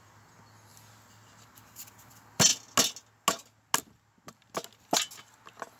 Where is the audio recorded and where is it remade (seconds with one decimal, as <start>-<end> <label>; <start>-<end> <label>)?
0.0-5.8 recorded